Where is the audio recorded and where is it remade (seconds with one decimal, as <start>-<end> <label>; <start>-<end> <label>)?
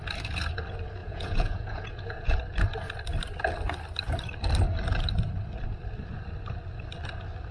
0.0-1.0 recorded; 1.0-2.4 remade; 2.4-7.5 recorded